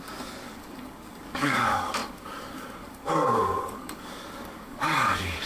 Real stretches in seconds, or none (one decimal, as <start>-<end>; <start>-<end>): none